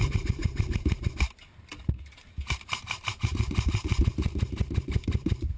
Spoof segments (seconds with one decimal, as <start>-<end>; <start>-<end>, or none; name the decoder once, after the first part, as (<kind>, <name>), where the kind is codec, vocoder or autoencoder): 0.0-5.6 (vocoder, BigVGAN v2)